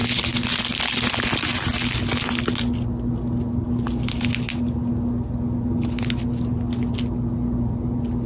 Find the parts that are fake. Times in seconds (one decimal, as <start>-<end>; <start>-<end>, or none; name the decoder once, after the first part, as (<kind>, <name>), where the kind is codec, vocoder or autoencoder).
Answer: none